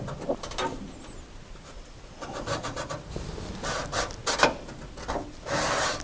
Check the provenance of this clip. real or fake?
real